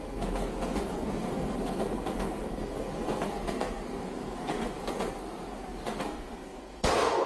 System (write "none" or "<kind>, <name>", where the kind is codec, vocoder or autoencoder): codec, SNAC